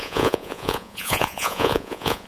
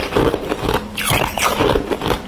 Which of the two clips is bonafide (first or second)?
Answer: second